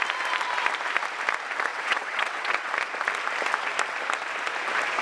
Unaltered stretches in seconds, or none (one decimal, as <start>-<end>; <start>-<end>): 0.0-1.7; 2.7-5.0